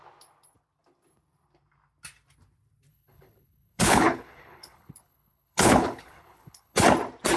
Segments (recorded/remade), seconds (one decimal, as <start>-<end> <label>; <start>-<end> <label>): 0.0-2.9 recorded; 2.9-6.8 remade; 6.8-7.4 recorded